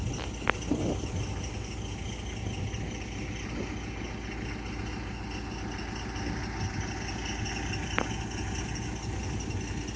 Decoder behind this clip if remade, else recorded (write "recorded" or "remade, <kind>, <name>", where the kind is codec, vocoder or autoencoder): recorded